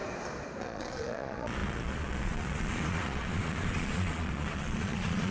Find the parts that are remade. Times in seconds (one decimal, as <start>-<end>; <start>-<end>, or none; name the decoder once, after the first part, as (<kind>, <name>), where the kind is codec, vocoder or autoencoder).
0.6-5.3 (vocoder, Vocos)